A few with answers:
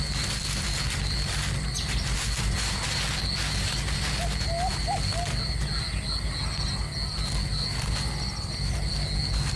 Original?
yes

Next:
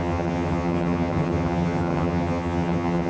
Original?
no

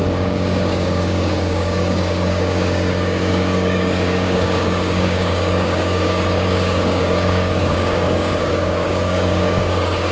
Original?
no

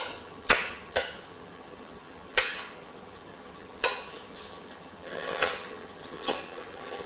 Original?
no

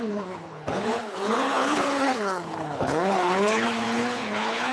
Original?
no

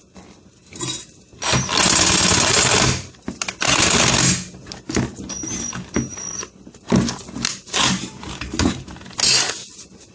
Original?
yes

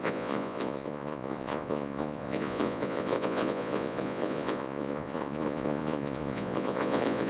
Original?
no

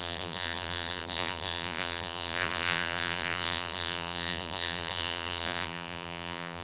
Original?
no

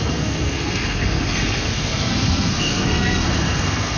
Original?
no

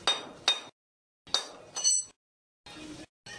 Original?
yes